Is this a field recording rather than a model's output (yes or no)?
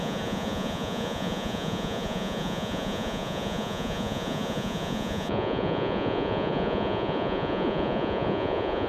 no